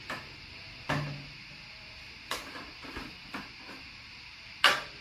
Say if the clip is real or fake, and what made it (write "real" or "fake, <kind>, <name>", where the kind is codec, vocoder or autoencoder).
fake, vocoder, BigVGAN v2